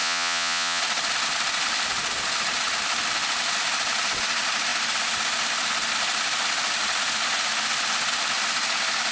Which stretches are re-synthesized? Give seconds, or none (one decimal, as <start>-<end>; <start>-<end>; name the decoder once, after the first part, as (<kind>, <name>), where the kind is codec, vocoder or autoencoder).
0.0-0.8 (vocoder, Vocos)